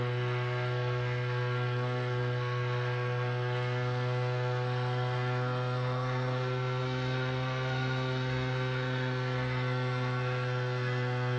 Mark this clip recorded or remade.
remade